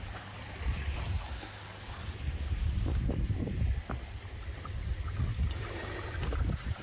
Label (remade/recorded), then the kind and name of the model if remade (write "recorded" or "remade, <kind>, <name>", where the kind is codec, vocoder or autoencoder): recorded